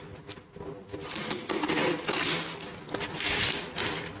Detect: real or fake real